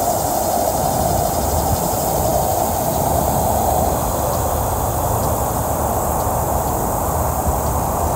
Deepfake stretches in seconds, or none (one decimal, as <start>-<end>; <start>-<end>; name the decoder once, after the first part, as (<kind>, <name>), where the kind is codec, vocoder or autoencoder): none